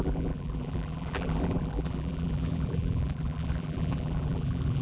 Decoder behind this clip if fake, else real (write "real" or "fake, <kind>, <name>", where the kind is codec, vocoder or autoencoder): fake, vocoder, BigVGAN v2